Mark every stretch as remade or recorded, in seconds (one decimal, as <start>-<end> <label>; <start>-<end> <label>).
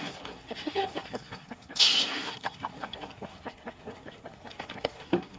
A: 0.0-5.4 remade